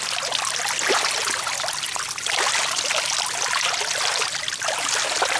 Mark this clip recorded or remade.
recorded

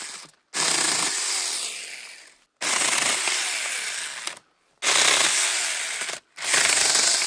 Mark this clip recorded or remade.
recorded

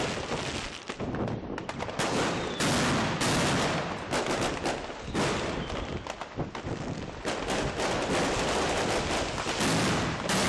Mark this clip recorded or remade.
recorded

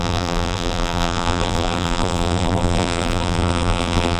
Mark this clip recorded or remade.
remade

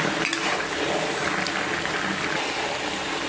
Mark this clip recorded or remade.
recorded